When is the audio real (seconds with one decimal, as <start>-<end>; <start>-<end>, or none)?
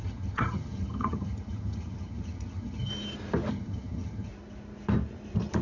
2.9-3.5; 4.3-5.6